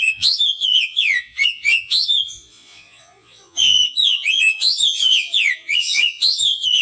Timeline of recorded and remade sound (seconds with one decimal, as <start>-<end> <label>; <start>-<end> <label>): 0.0-6.8 remade